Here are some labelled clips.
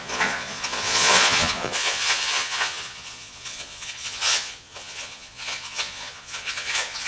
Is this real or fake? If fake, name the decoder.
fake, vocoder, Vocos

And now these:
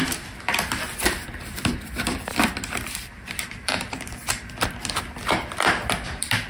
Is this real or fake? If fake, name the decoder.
fake, vocoder, BigVGAN v2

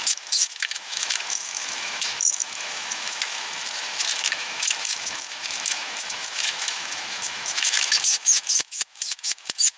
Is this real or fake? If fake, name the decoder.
fake, autoencoder, DAC-VAE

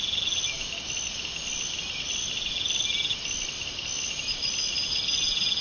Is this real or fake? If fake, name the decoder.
real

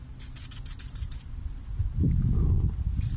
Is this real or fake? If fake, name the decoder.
real